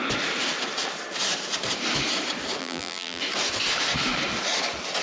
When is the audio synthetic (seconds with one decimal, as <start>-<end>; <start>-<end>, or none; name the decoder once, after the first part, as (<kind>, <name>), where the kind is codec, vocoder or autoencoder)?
2.6-3.2 (vocoder, BigVGAN v2)